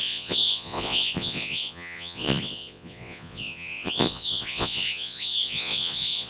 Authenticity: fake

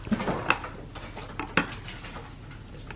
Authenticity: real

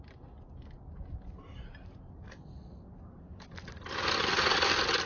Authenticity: real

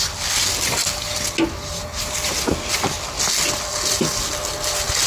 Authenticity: real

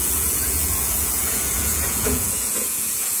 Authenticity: fake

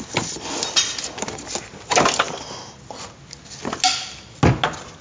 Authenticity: real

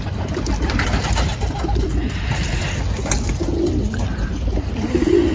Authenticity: real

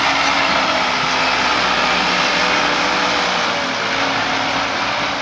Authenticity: real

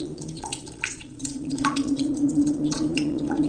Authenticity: fake